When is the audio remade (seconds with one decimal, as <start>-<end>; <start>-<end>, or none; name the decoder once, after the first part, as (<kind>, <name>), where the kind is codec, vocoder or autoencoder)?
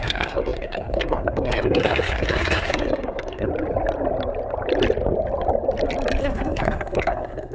0.0-3.5 (codec, SNAC); 6.2-7.5